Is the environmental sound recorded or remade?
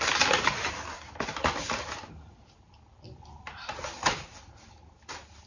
recorded